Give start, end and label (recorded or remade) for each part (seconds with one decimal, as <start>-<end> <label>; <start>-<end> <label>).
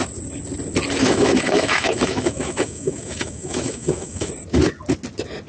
0.0-1.0 recorded; 1.0-4.3 remade; 4.3-5.5 recorded